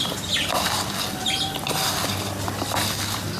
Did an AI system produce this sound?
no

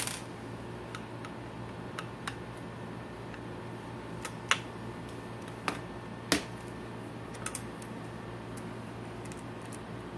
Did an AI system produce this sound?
no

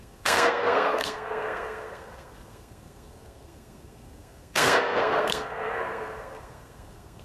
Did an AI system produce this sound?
yes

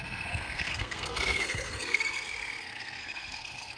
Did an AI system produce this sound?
yes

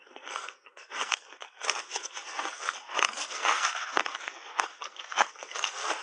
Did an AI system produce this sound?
yes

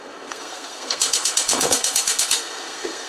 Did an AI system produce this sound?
yes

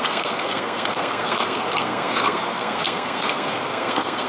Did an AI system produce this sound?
yes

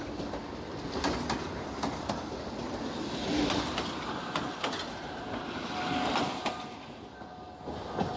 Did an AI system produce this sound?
no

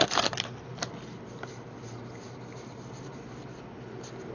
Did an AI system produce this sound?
no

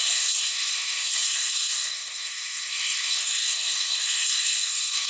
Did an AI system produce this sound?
yes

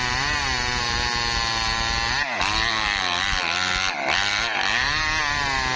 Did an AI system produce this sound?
no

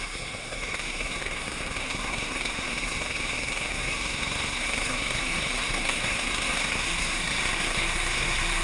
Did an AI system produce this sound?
yes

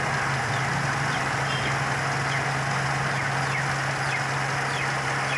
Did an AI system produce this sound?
no